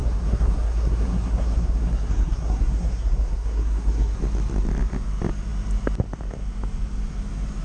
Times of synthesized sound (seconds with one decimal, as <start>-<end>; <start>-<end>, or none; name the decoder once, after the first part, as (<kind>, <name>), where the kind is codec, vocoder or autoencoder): 0.0-4.2 (codec, SNAC)